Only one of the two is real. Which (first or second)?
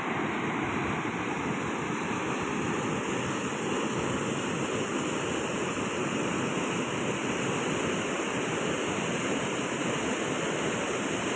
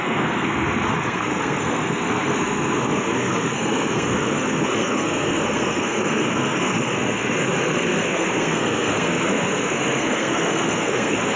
first